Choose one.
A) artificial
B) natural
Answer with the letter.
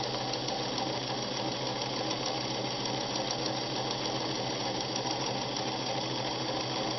B